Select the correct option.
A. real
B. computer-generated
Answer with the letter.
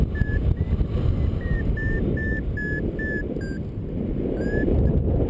A